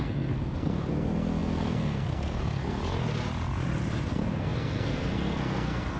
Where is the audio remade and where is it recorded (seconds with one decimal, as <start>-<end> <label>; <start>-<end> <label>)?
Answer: 0.0-2.8 remade; 2.8-4.1 recorded; 4.1-6.0 remade